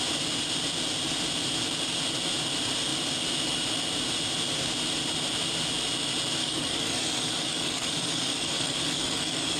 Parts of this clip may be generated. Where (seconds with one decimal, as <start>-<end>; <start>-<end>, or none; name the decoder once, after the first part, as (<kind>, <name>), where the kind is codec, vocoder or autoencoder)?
6.4-9.6 (codec, DAC)